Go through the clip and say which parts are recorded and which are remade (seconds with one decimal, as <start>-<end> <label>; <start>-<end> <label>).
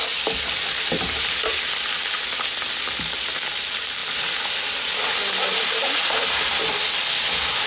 0.0-7.7 recorded